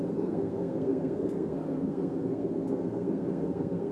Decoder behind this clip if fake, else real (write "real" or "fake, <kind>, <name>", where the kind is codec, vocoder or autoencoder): fake, codec, SNAC